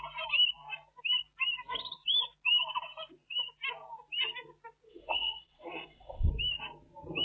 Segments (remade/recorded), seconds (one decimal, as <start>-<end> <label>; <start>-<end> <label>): 0.0-4.9 recorded; 4.9-6.3 remade; 6.3-7.2 recorded